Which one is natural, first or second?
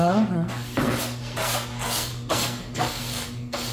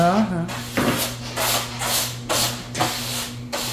second